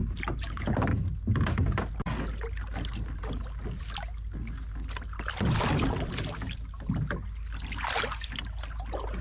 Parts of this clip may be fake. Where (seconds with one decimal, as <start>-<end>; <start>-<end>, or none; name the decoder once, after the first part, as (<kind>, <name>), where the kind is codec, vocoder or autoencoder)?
none